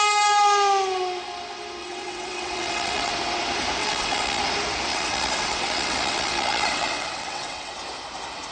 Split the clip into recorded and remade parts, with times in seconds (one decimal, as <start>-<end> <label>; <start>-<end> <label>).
0.0-1.8 recorded; 1.8-3.1 remade; 3.1-3.8 recorded; 3.8-4.4 remade; 4.4-4.9 recorded; 4.9-7.7 remade; 7.7-8.5 recorded